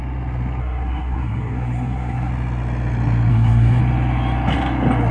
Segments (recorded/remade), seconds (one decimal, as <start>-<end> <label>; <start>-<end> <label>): 0.0-0.6 recorded; 0.6-2.3 remade; 2.3-3.3 recorded; 3.3-3.8 remade; 3.8-5.1 recorded